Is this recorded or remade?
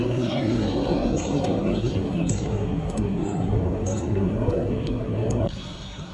remade